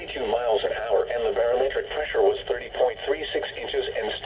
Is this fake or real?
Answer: real